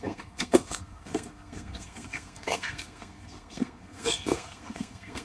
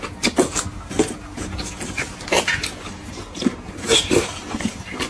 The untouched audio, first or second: second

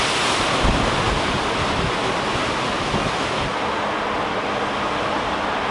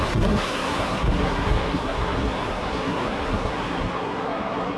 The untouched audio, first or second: first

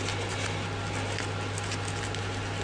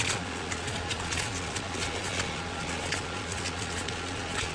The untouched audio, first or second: first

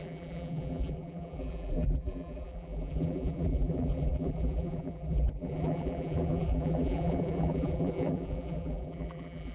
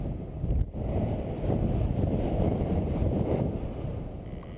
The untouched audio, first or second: second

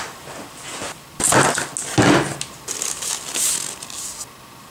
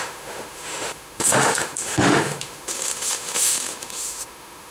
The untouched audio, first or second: first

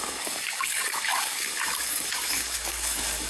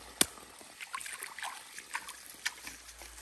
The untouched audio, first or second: second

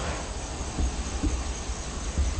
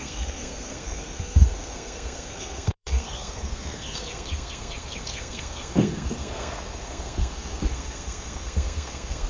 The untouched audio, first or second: first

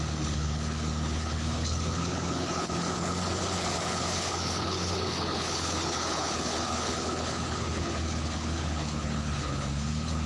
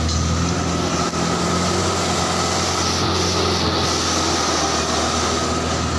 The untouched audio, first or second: second